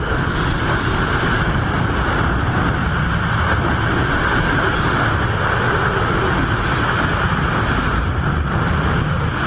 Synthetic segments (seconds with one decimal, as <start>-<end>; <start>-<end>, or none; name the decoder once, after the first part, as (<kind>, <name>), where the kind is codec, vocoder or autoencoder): none